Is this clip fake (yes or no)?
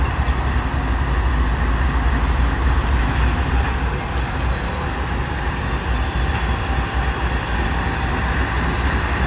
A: no